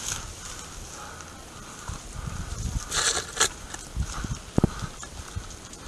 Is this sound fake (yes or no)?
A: no